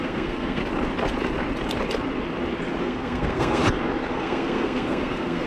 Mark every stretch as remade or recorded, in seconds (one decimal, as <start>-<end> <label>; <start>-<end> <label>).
0.0-0.6 remade; 0.6-2.8 recorded; 2.8-3.6 remade; 3.6-4.1 recorded; 4.1-5.5 remade